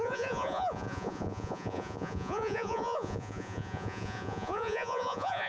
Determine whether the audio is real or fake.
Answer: fake